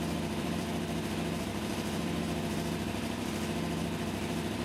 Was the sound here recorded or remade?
remade